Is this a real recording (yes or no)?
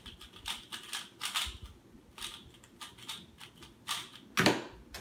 yes